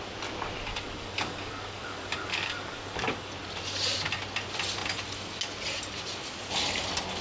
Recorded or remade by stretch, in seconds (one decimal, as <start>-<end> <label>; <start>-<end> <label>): 0.0-0.7 recorded; 0.7-3.3 remade; 3.3-7.2 recorded